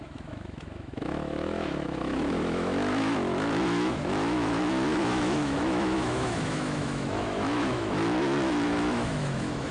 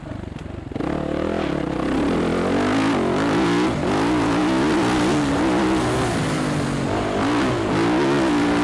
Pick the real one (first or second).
second